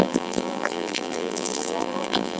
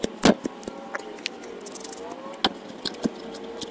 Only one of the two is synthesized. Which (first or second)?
first